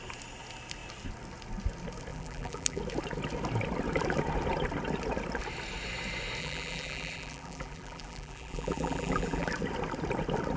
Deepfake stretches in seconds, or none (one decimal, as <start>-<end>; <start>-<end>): 2.1-2.8; 6.4-9.5